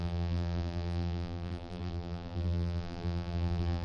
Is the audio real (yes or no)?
no